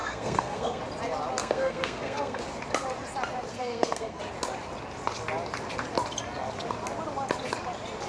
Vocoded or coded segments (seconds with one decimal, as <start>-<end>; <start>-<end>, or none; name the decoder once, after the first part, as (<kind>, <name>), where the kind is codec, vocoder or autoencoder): 0.0-0.8 (codec, SNAC); 1.4-2.4; 3.5-4.2